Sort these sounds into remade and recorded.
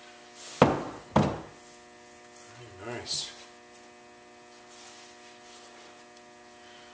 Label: recorded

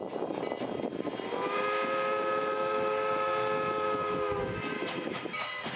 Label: recorded